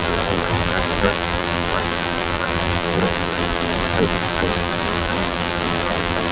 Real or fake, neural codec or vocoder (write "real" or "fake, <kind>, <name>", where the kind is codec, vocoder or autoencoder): fake, vocoder, BigVGAN v2